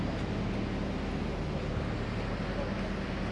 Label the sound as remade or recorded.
recorded